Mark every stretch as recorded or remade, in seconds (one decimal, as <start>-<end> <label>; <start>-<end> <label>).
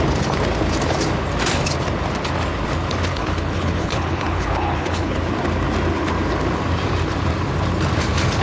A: 0.0-3.1 recorded; 3.1-5.2 remade; 5.2-8.4 recorded